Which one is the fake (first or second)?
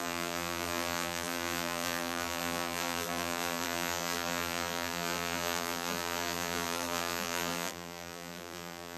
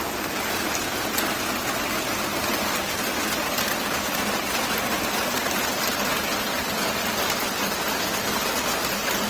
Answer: first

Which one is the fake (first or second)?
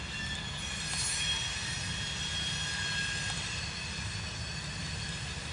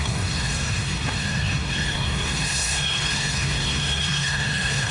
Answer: second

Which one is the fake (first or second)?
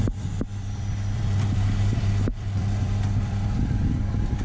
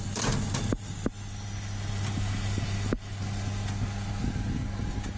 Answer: first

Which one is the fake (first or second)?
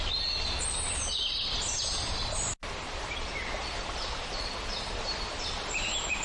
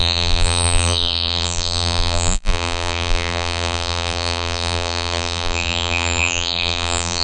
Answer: second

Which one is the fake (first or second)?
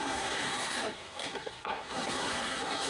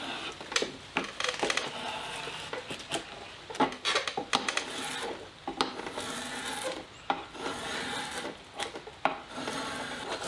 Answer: first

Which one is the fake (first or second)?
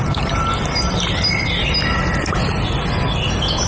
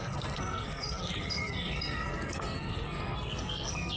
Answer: second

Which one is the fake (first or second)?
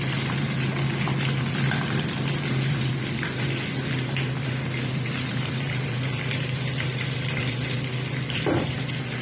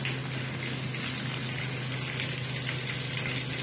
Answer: first